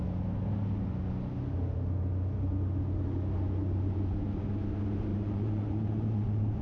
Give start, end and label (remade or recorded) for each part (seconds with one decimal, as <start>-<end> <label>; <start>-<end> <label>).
0.0-5.1 recorded; 5.1-6.6 remade